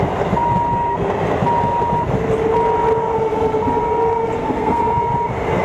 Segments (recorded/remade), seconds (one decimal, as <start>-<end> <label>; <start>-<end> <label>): 0.0-4.4 recorded; 4.4-5.0 remade; 5.0-5.6 recorded